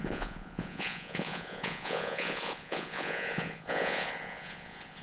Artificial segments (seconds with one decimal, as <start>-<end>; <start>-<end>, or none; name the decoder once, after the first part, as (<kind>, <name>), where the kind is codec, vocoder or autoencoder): 0.0-5.0 (vocoder, Vocos)